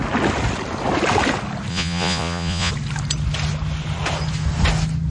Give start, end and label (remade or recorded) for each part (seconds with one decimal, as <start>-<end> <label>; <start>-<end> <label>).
0.0-1.7 recorded; 1.7-2.7 remade; 2.7-5.1 recorded